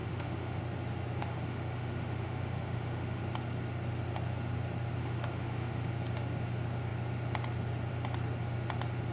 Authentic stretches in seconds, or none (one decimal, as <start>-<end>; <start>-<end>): 0.6-1.2; 3.2-5.0; 5.9-9.1